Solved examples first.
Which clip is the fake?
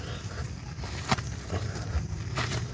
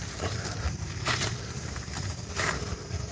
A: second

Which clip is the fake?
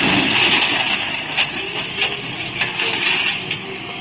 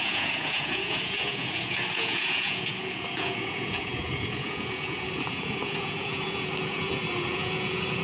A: second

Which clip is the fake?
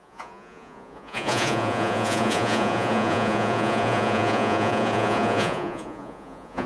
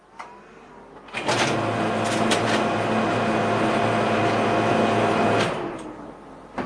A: first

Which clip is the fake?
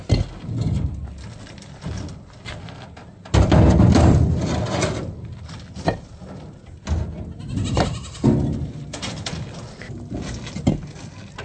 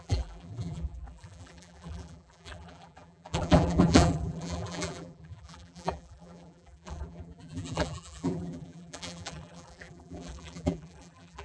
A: second